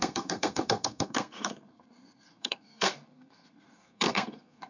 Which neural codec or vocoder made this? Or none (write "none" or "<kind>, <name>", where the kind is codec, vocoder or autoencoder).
codec, SNAC